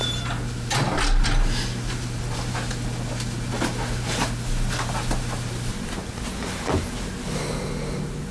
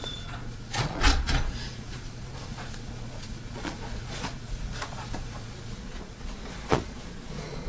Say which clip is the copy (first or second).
second